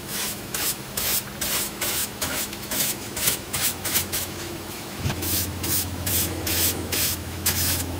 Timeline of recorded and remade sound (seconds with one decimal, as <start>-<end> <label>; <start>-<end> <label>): 0.0-1.1 remade; 1.1-1.6 recorded; 1.6-8.0 remade